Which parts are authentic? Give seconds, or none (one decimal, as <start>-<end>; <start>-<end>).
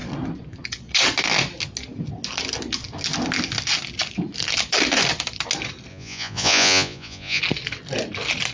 0.0-5.9; 7.4-8.5